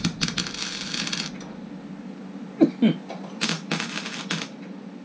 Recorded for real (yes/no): yes